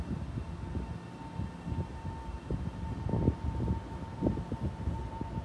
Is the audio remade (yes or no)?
no